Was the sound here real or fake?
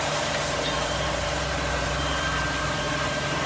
fake